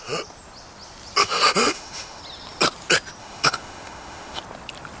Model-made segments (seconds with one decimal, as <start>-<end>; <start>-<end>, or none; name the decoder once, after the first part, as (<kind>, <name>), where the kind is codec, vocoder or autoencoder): 1.2-2.2 (autoencoder, DAC-VAE); 3.2-4.4